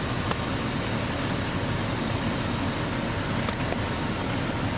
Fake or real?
real